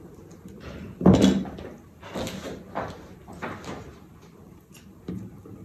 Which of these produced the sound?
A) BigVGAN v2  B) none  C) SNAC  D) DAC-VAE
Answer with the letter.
B